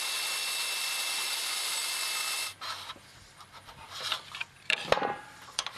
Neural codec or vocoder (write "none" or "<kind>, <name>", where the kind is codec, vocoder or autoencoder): vocoder, BigVGAN v2